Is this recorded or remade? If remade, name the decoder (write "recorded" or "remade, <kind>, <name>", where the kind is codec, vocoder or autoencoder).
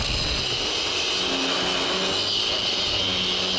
recorded